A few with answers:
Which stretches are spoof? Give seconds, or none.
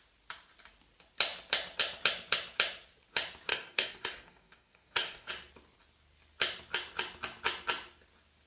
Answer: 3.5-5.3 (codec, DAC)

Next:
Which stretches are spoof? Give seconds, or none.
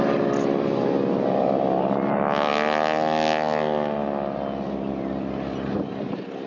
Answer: none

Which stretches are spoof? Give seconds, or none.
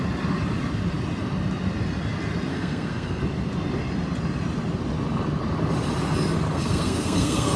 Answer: 2.5-3.2 (codec, SNAC); 6.5-7.6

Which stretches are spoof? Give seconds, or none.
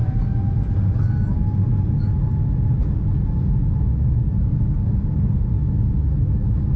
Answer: none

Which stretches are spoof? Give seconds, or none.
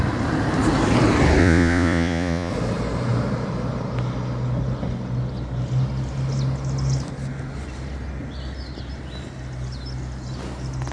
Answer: 1.4-2.5 (vocoder, Vocos)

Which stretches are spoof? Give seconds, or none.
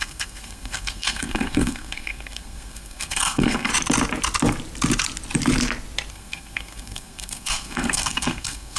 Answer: 0.0-3.7 (codec, SNAC); 6.1-8.8